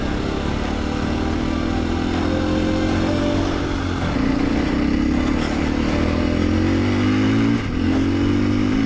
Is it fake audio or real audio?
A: real